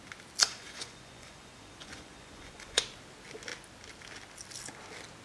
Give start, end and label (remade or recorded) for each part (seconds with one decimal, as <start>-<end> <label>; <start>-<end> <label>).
0.0-0.4 recorded; 0.4-2.8 remade; 2.8-5.2 recorded